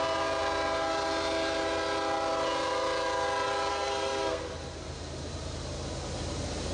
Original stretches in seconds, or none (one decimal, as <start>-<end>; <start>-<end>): 0.0-3.7; 4.4-6.7